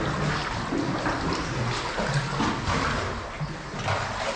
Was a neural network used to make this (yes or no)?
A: no